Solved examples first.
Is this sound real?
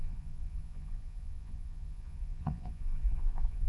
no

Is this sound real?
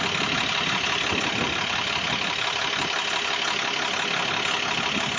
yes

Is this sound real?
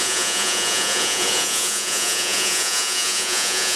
no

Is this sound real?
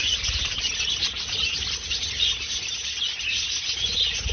yes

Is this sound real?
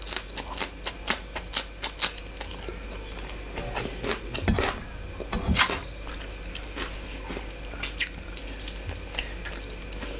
yes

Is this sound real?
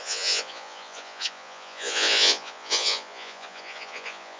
no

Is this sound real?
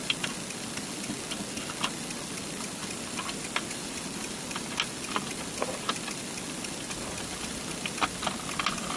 yes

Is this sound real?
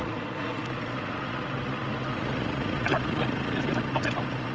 no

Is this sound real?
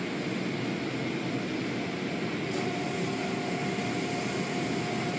yes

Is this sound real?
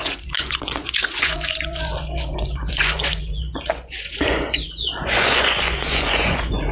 no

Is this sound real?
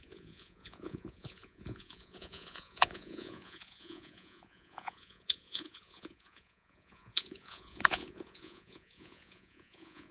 no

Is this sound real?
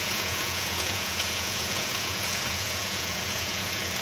no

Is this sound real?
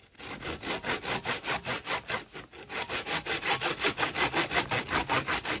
yes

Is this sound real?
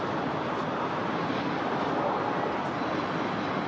yes